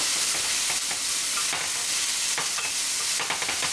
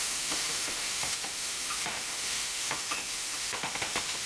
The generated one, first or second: second